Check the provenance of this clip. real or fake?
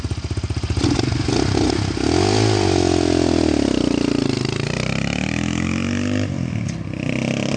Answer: real